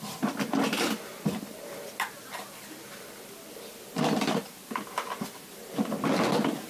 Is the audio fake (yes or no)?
yes